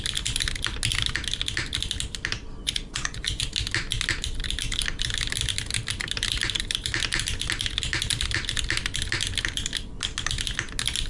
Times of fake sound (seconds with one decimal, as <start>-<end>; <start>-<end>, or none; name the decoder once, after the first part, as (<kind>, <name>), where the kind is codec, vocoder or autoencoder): 2.6-3.4 (vocoder, Vocos)